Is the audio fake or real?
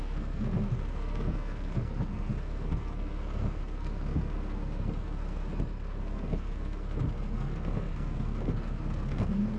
fake